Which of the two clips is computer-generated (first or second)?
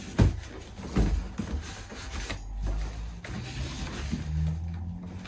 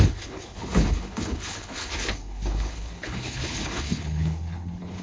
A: second